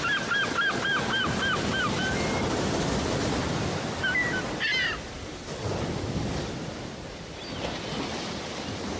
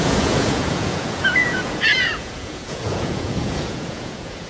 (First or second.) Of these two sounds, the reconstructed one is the second